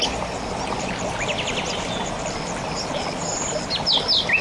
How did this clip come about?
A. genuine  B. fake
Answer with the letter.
A